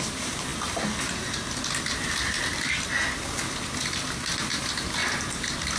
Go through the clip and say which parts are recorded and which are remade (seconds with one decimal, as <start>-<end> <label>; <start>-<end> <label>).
0.0-5.8 recorded